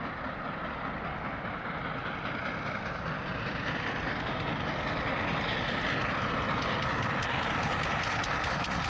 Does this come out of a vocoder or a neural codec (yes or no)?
no